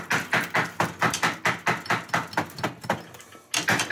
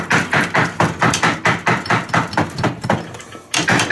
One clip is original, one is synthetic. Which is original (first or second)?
first